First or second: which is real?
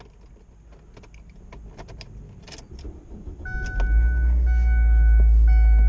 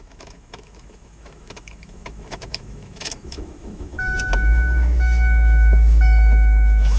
first